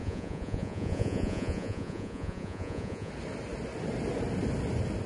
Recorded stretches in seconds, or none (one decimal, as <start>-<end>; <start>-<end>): 3.1-5.1